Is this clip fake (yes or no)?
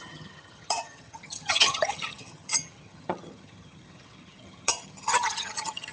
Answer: yes